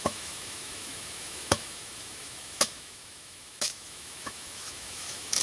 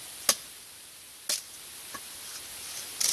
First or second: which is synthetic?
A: first